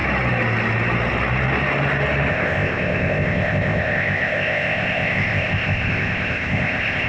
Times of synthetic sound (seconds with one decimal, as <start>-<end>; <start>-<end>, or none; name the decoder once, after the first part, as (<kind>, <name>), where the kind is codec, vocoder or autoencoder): 2.3-7.1 (codec, ZipCodec)